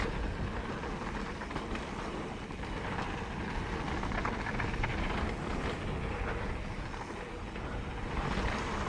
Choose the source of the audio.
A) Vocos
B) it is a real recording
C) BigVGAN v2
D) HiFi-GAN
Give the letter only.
B